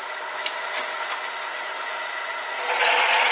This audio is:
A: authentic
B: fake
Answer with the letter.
A